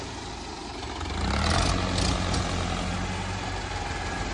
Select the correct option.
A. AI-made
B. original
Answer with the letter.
B